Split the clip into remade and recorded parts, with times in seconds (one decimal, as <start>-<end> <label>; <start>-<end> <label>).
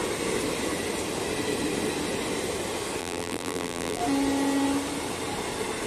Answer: 0.0-3.0 recorded; 3.0-4.0 remade; 4.0-5.9 recorded